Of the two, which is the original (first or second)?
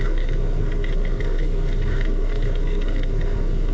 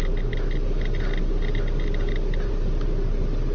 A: second